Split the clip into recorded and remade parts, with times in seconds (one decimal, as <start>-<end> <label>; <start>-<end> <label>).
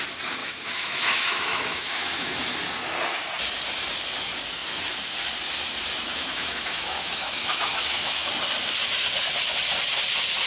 0.0-0.4 recorded; 0.4-2.4 remade; 2.4-6.1 recorded; 6.1-8.3 remade; 8.3-10.5 recorded